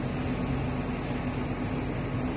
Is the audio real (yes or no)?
yes